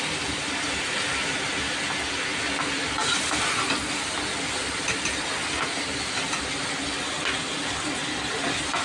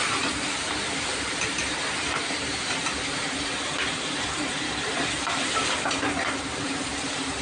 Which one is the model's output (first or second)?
second